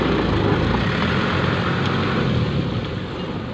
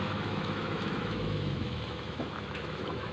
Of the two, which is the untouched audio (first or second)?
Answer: first